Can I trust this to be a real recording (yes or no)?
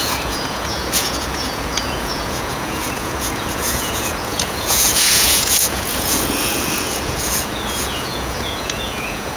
no